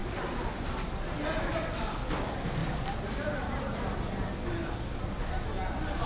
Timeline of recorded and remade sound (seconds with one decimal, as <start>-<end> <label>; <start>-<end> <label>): 0.0-0.7 remade; 0.7-2.6 recorded; 2.6-4.0 remade; 4.0-6.1 recorded